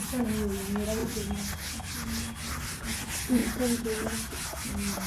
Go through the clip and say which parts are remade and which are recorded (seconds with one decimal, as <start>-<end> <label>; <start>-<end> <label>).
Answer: 0.0-5.1 recorded

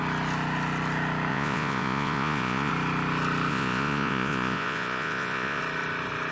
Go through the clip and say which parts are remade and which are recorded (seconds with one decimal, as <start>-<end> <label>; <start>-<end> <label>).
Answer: 0.0-1.3 recorded; 1.3-2.7 remade; 2.7-3.5 recorded; 3.5-5.6 remade; 5.6-6.3 recorded

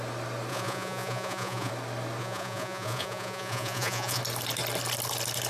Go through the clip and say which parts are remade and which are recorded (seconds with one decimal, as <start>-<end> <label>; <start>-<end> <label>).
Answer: 0.0-0.5 recorded; 0.5-1.7 remade; 1.7-2.2 recorded; 2.2-4.2 remade; 4.2-5.5 recorded

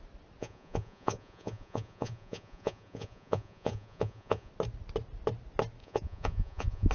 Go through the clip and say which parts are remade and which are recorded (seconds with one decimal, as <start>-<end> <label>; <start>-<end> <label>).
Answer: 0.0-0.4 recorded; 0.4-4.5 remade; 4.5-5.8 recorded; 5.8-6.9 remade